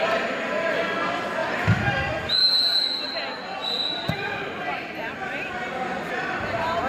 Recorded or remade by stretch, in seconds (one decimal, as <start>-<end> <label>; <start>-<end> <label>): 0.0-6.9 recorded